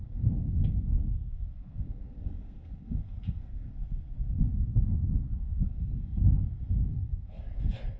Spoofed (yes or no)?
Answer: yes